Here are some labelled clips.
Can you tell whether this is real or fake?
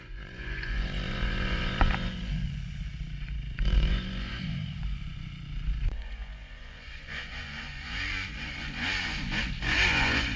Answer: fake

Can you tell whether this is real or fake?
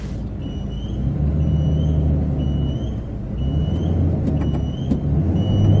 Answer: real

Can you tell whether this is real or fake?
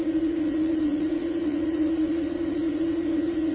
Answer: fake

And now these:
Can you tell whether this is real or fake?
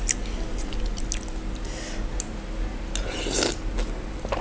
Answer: real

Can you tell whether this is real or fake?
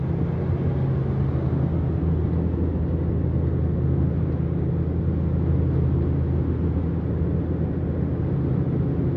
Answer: real